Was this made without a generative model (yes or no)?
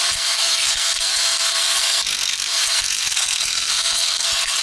no